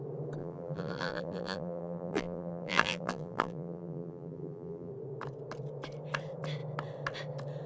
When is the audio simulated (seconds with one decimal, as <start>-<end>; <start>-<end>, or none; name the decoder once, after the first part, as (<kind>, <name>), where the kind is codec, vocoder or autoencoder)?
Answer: 0.4-4.9 (vocoder, BigVGAN v2)